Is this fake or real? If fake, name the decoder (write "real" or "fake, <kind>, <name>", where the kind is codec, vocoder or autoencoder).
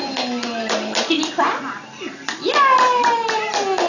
real